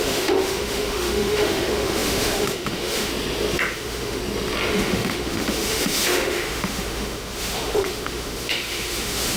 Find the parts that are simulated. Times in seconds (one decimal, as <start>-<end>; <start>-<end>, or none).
0.0-3.1; 3.7-4.2; 4.7-9.4